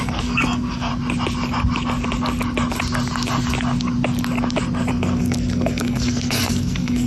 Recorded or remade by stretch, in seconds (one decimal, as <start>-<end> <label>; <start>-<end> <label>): 0.0-0.9 remade; 0.9-4.9 recorded; 4.9-7.1 remade